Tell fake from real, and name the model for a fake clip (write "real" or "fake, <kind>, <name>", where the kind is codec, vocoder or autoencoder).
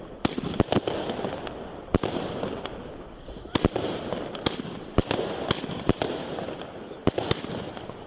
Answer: real